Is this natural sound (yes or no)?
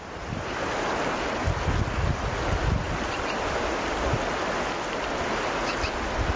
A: yes